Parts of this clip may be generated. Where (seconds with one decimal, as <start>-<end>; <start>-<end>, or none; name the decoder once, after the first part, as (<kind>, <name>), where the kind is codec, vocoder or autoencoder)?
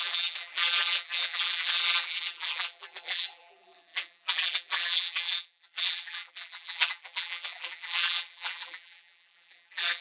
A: 0.0-10.0 (vocoder, BigVGAN v2)